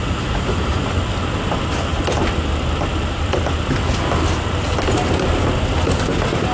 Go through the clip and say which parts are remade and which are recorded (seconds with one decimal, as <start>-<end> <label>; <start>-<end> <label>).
0.0-0.8 remade; 0.8-6.5 recorded